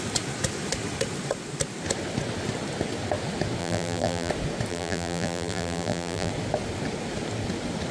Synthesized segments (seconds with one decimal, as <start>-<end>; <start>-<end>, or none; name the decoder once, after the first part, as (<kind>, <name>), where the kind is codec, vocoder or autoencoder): 3.6-4.3 (vocoder, BigVGAN v2); 4.7-6.3

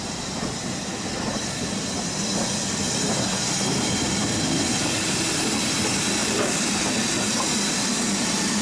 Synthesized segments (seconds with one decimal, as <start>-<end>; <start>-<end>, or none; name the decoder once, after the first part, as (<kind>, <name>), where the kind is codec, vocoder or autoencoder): 6.2-6.8 (vocoder, BigVGAN v2)

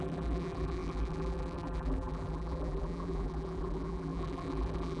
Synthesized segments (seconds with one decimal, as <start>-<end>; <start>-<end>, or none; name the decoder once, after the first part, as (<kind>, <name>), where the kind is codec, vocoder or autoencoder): 0.0-5.0 (vocoder, BigVGAN v2)

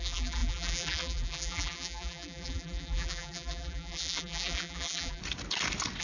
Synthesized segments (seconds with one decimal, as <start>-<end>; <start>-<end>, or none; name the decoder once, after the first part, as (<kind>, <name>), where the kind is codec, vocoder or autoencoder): 0.0-5.2 (vocoder, BigVGAN v2)

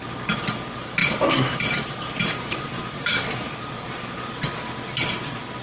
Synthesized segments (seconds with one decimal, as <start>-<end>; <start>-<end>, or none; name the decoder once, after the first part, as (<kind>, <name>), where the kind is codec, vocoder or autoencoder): 1.0-3.5 (vocoder, BigVGAN v2)

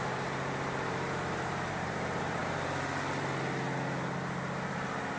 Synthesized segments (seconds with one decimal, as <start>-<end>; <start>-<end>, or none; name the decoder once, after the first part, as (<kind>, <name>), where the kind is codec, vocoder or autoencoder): 0.0-2.4 (vocoder, BigVGAN v2); 4.7-5.2

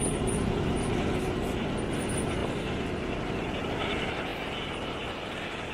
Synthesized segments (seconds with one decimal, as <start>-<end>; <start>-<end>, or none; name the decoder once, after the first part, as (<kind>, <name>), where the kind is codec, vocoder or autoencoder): none

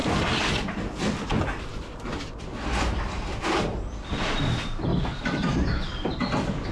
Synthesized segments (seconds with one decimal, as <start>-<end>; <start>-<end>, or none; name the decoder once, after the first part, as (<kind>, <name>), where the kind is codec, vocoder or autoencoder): none